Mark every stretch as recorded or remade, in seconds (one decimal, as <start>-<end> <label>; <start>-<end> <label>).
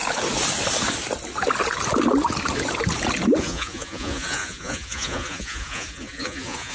0.0-3.4 recorded; 3.4-6.7 remade